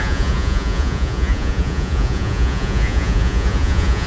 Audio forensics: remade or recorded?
remade